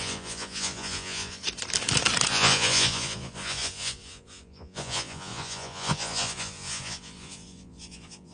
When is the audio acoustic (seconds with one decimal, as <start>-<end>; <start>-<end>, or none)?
1.4-2.3